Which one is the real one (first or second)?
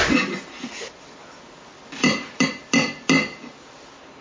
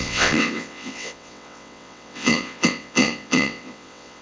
first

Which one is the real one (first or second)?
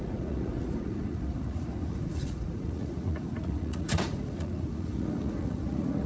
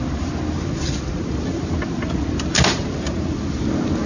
second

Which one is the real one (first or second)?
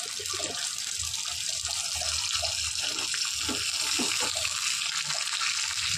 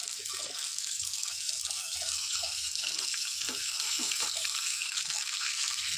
first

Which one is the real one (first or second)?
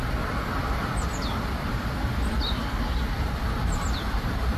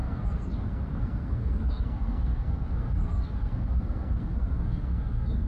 first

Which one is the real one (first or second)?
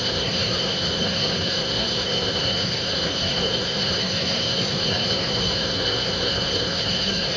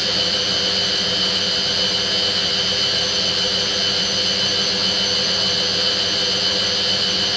second